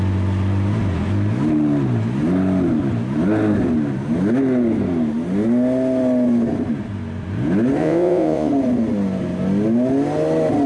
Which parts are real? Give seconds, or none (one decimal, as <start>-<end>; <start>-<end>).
0.0-7.8; 8.5-10.7